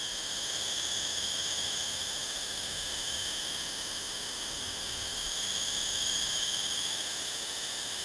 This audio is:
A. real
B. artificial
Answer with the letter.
B